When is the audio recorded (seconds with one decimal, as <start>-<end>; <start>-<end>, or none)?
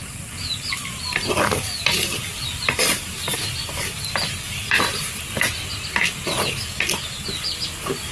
0.0-8.1